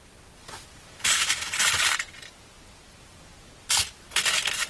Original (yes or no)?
yes